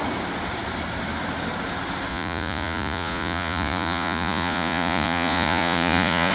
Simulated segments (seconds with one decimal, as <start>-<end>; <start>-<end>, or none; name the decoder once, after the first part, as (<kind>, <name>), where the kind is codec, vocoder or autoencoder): 2.1-6.3 (vocoder, Vocos)